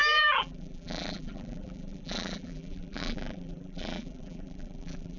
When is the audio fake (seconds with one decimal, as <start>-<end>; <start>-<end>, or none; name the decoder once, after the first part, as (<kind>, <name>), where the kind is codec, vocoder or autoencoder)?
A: 0.0-5.2 (vocoder, BigVGAN v2)